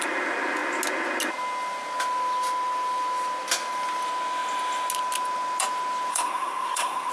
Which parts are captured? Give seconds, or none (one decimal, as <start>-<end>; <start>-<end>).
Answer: 0.0-6.1